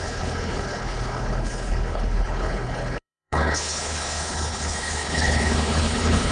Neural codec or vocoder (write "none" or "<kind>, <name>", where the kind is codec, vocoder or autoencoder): codec, HILCodec